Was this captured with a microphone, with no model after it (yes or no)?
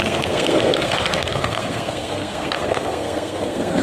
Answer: no